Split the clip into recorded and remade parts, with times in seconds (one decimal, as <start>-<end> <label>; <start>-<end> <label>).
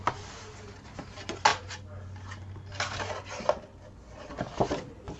0.0-5.2 recorded